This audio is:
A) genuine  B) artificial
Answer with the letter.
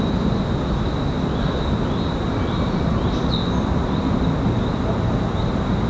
A